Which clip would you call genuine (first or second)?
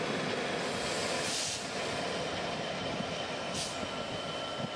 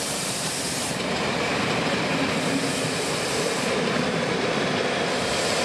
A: first